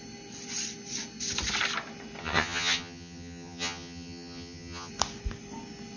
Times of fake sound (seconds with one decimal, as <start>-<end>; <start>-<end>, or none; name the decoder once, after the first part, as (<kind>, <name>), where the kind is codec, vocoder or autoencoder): 2.2-4.9 (vocoder, HiFi-GAN)